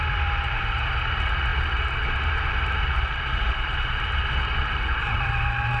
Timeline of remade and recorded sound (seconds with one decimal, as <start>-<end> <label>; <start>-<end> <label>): 0.0-5.8 remade